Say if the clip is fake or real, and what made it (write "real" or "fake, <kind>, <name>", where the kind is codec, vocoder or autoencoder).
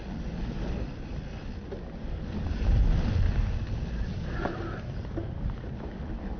real